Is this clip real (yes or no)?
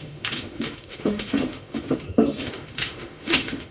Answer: no